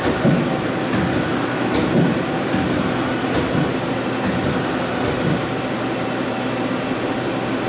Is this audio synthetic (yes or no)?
no